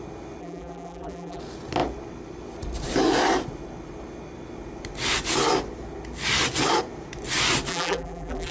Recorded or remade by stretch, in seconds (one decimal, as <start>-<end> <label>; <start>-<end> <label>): 0.0-0.4 recorded; 0.4-1.4 remade; 1.4-7.7 recorded; 7.7-8.5 remade